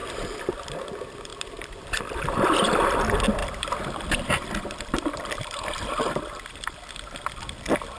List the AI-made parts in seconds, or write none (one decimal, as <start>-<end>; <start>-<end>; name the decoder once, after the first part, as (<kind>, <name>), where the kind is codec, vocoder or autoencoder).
0.0-0.7 (vocoder, BigVGAN v2); 1.3-2.2; 3.4-5.9